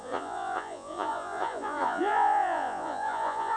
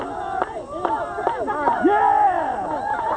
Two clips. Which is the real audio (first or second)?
second